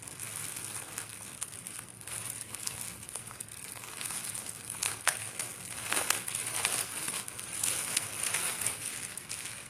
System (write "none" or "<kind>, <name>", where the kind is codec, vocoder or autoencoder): codec, SNAC